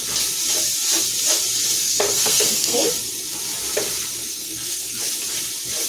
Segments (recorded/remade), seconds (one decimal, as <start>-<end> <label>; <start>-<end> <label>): 0.0-1.8 recorded; 1.8-2.9 remade; 2.9-4.3 recorded; 4.3-5.0 remade; 5.0-5.9 recorded

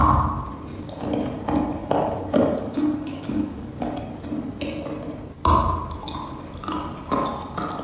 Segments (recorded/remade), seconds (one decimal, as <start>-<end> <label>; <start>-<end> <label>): 0.0-1.8 recorded; 1.8-4.1 remade; 4.1-7.8 recorded